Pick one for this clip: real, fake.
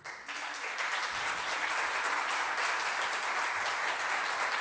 real